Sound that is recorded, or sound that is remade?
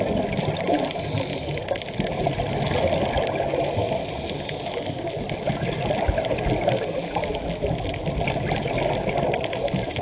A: recorded